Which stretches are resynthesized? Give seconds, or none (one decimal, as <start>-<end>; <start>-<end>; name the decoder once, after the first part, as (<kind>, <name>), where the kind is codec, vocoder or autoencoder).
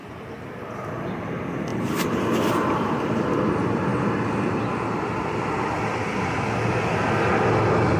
0.6-3.9 (vocoder, BigVGAN v2); 6.9-8.0